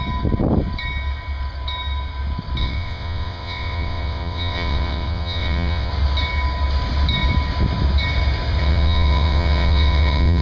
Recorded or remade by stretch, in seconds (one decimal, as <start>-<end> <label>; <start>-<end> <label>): 0.0-2.6 recorded; 2.6-5.9 remade; 5.9-8.6 recorded; 8.6-10.4 remade